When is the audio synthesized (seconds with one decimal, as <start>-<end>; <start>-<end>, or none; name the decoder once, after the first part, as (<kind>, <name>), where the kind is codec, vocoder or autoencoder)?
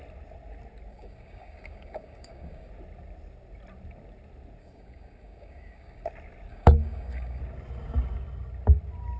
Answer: 0.9-2.7 (codec, DAC); 4.6-6.1; 6.5-7.4